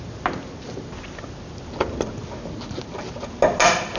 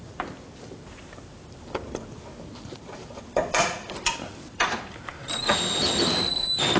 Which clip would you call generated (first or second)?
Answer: second